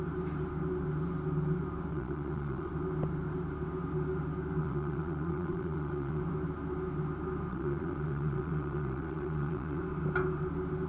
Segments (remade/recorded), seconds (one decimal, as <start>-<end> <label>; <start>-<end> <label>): 0.0-1.9 recorded; 1.9-2.7 remade; 2.7-4.6 recorded; 4.6-6.2 remade; 6.2-7.5 recorded; 7.5-9.8 remade; 9.8-10.9 recorded